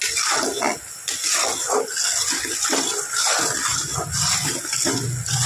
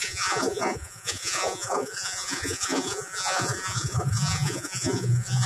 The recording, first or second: first